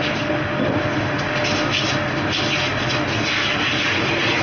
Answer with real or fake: real